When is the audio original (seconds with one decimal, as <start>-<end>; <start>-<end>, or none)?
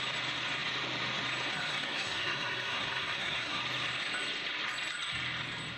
0.0-1.7; 3.6-5.8